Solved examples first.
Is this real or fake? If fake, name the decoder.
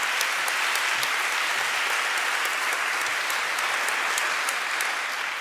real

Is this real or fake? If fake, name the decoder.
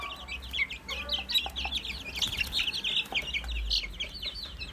real